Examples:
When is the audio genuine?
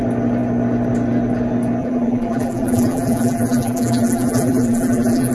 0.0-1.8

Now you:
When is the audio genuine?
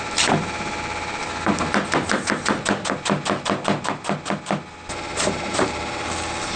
1.2-5.2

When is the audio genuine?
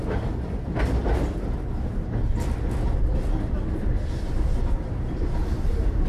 1.0-3.9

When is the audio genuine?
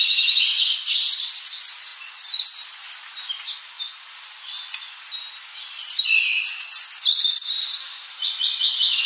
1.9-2.7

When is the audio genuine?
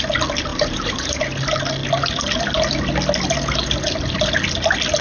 0.0-0.5; 1.2-5.0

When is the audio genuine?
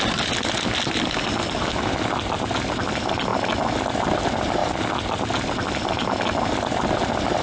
3.3-4.1